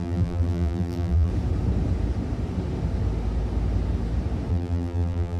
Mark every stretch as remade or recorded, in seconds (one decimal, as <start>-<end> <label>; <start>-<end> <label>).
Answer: 0.0-1.3 remade; 1.3-4.5 recorded; 4.5-5.4 remade